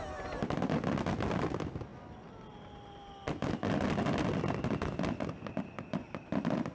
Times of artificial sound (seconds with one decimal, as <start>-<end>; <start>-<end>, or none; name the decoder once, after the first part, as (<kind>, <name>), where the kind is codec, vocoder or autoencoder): none